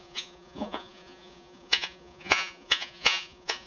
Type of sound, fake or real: fake